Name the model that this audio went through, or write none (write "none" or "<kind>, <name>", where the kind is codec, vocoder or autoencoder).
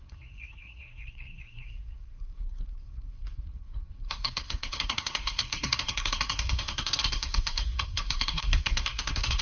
codec, SNAC